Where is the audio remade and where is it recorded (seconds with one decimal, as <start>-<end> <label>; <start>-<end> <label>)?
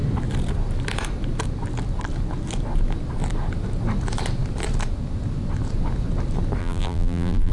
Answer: 0.0-6.6 recorded; 6.6-7.5 remade